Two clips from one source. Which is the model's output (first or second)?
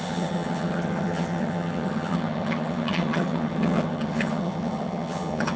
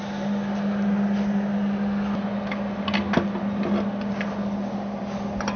first